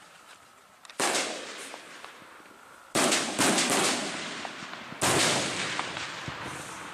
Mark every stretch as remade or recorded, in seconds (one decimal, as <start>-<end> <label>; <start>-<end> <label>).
0.0-6.9 recorded